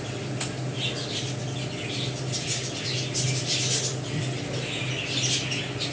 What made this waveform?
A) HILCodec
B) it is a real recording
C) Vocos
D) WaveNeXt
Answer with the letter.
B